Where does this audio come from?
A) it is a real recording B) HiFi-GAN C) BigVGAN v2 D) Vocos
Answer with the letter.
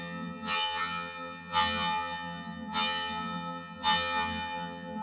B